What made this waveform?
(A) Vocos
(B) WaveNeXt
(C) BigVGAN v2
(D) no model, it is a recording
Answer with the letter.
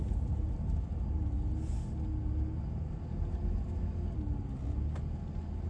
D